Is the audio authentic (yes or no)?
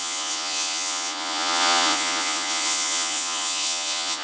no